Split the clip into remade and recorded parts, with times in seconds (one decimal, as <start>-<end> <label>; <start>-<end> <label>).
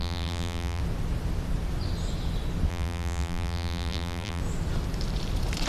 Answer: 0.0-0.8 remade; 0.8-2.7 recorded; 2.7-4.4 remade; 4.4-5.7 recorded